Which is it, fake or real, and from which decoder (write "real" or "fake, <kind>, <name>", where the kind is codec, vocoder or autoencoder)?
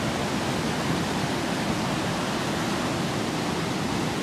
real